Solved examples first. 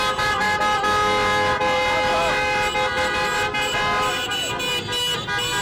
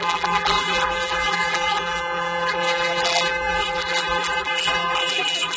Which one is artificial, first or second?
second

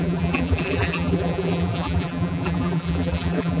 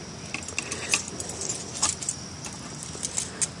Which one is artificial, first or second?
first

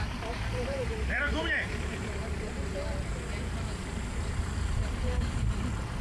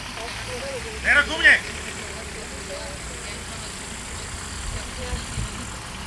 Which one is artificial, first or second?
first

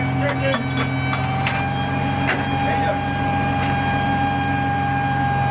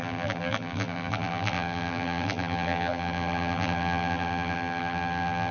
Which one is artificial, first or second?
second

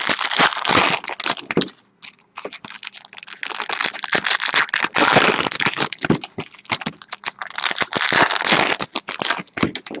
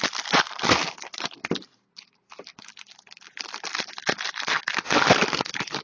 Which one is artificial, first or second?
second